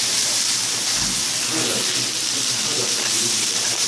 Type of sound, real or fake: real